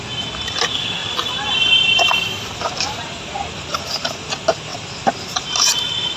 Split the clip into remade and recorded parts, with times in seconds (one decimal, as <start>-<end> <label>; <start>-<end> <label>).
0.0-1.0 recorded; 1.0-3.2 remade; 3.2-4.7 recorded; 4.7-5.5 remade; 5.5-6.2 recorded